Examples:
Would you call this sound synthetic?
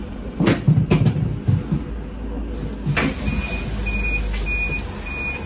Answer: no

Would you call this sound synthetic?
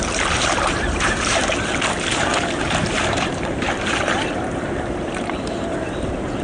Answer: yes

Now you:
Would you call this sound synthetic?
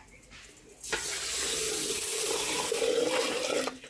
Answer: no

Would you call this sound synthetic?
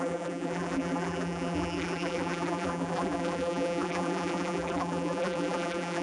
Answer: yes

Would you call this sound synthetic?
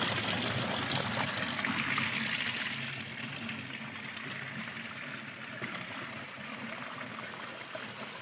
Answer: no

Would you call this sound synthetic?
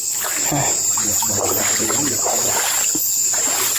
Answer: no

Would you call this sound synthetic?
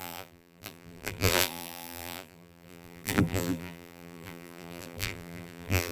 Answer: yes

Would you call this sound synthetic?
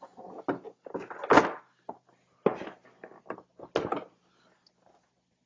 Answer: no